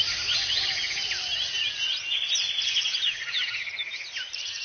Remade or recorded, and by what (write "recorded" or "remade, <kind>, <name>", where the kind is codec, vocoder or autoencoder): recorded